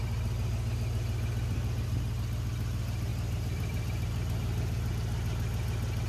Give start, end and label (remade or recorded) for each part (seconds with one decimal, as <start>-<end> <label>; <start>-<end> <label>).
0.0-3.1 recorded; 3.1-4.9 remade; 4.9-6.1 recorded